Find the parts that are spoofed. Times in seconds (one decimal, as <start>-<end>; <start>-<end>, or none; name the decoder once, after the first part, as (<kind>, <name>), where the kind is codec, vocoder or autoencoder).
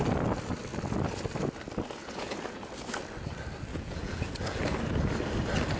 2.0-2.6 (vocoder, Vocos); 3.7-4.6